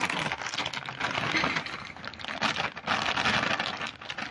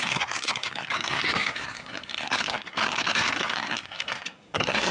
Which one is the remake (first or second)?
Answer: second